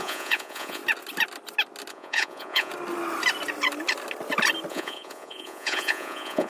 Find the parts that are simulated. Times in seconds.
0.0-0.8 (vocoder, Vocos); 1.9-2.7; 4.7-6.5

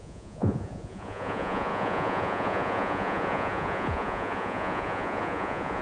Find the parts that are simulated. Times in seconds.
0.0-5.8 (vocoder, Vocos)

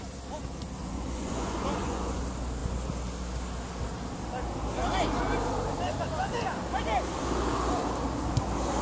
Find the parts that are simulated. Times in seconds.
0.8-2.2 (vocoder, Vocos)

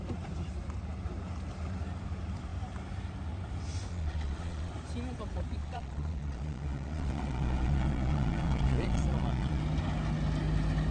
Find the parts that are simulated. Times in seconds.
3.9-4.7 (vocoder, Vocos); 5.6-9.6